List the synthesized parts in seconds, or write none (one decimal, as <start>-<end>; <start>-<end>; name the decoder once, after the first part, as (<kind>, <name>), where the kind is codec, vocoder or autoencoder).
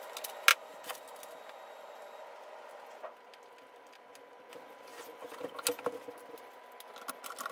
none